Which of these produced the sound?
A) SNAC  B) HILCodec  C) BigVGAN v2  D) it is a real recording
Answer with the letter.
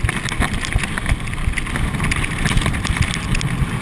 D